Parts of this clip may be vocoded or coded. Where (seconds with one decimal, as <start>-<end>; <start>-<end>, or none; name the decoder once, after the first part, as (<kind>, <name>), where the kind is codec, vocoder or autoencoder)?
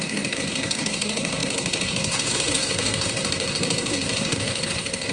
0.0-5.1 (codec, SNAC)